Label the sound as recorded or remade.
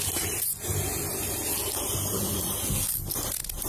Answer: recorded